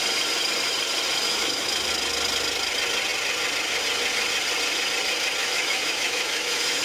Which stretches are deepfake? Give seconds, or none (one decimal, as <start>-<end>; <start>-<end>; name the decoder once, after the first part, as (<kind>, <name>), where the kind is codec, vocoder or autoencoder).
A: 1.3-1.9 (autoencoder, DAC-VAE); 5.4-6.8